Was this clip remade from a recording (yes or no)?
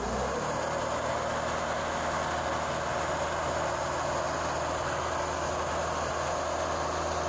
no